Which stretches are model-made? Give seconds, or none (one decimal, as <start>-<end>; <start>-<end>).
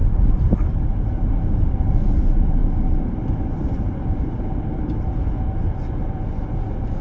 none